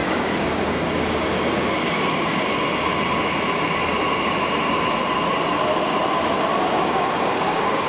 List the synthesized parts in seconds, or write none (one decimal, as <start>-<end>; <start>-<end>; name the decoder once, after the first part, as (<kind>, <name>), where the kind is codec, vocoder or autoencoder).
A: 0.0-2.4 (codec, DAC); 6.5-7.9